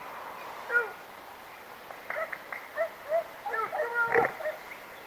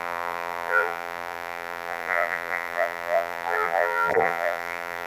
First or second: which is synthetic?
second